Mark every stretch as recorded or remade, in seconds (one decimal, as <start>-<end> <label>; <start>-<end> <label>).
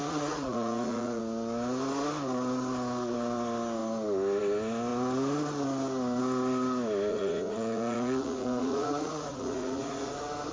0.0-1.2 remade; 1.2-7.1 recorded; 7.1-10.1 remade; 10.1-10.5 recorded